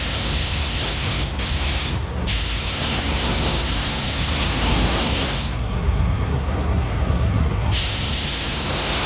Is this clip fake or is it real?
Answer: fake